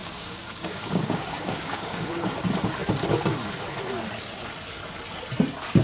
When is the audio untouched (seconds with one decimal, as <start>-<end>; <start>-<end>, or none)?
2.3-5.8